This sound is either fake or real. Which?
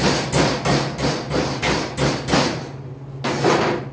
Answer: real